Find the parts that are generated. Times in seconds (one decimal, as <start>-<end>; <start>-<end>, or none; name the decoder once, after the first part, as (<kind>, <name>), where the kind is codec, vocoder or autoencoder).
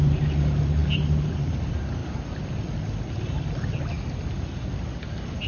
none